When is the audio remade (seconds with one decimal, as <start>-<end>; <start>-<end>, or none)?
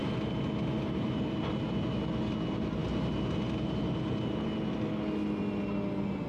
0.0-1.4; 2.8-4.7